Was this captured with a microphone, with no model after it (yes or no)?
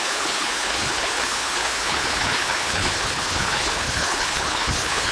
no